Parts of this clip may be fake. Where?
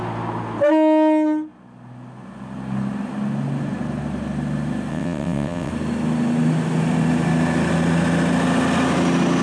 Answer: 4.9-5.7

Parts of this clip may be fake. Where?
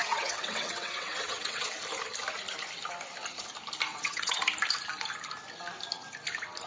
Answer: 0.0-1.8; 3.9-4.4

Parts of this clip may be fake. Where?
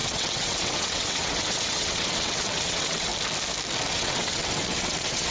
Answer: 0.0-3.1; 3.9-5.3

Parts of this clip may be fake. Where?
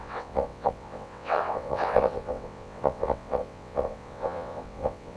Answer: 0.0-5.2